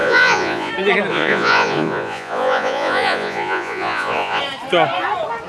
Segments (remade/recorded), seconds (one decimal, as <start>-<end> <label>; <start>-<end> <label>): 0.0-0.7 remade; 0.7-1.1 recorded; 1.1-4.4 remade; 4.4-5.5 recorded